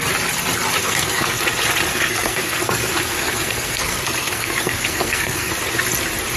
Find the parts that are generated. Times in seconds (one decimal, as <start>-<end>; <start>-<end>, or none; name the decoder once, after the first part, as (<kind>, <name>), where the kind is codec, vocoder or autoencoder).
0.8-1.4 (codec, SNAC); 1.9-5.5